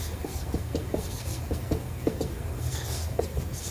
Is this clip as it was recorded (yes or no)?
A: no